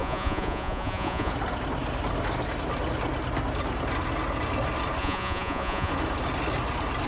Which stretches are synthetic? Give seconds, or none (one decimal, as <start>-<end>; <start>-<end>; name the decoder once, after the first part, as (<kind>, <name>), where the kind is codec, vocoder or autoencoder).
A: 0.0-1.3 (vocoder, Vocos); 5.0-5.9